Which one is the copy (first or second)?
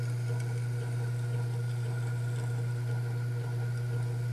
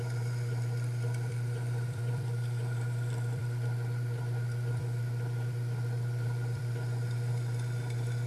second